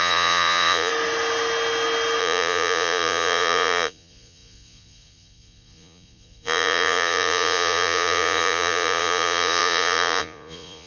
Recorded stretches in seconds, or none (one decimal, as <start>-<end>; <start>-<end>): 0.9-2.2